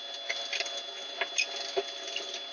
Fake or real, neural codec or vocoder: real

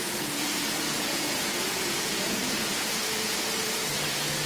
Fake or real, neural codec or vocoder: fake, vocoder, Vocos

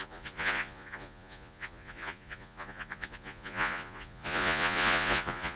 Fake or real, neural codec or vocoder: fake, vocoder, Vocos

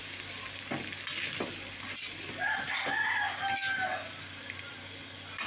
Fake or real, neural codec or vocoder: real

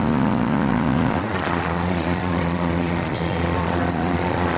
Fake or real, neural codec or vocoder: fake, vocoder, Vocos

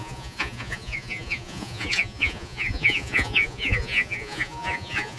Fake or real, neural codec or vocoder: fake, vocoder, Vocos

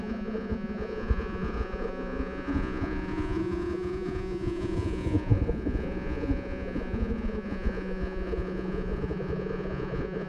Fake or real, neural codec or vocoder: fake, vocoder, Vocos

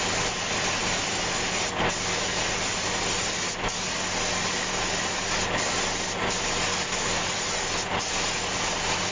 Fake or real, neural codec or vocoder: real